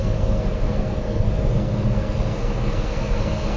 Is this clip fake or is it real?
fake